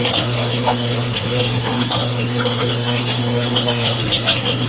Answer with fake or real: fake